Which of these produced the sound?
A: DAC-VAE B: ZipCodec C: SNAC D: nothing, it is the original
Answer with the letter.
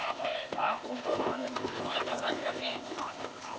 B